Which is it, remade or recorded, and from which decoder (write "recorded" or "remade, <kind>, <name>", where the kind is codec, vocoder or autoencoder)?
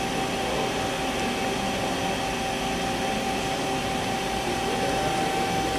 recorded